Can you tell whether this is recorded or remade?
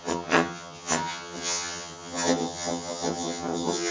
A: remade